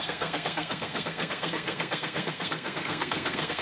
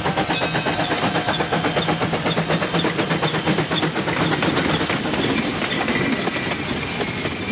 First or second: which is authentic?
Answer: second